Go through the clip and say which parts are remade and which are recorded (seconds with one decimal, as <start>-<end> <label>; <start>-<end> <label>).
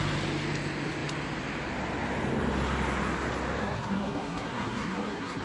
0.0-3.6 recorded; 3.6-5.4 remade